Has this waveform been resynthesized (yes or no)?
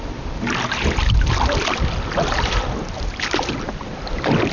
no